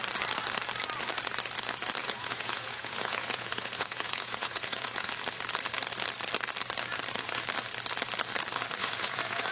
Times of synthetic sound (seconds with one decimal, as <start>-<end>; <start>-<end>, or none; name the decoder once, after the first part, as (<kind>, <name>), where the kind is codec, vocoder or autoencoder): 2.0-5.1 (vocoder, Vocos); 8.8-9.5